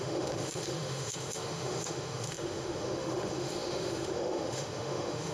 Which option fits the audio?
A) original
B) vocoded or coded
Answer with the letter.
B